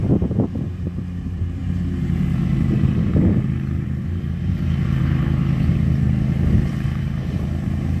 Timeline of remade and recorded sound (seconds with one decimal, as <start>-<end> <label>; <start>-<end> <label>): 0.0-8.0 remade